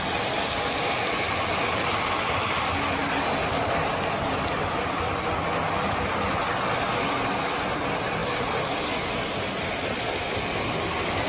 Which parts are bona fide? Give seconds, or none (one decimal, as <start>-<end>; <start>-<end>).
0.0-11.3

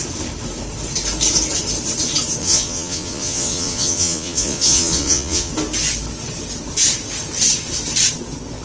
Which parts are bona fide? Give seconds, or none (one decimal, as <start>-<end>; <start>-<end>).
0.0-2.4; 5.5-8.6

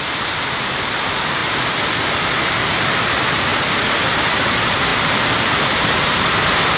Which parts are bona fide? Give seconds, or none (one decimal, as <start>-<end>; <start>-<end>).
1.4-2.4; 3.5-4.0

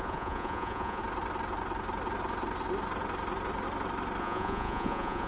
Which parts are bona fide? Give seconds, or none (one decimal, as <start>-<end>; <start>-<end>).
1.0-4.2

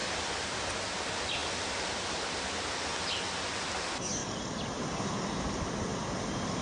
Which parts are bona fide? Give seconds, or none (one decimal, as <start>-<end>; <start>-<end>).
0.6-6.6

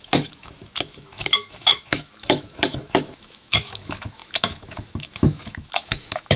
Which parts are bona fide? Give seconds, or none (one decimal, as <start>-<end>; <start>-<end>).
none

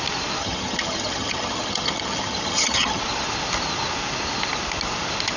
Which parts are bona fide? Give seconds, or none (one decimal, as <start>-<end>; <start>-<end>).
0.0-0.4; 3.0-5.4